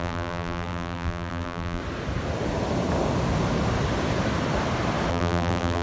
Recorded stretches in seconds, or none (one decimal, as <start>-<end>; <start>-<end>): 1.8-5.1